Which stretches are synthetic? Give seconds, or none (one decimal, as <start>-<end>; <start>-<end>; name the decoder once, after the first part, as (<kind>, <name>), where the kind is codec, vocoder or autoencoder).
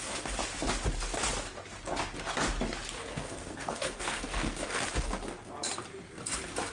3.1-4.8 (codec, SNAC)